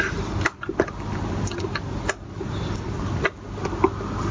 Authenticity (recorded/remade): recorded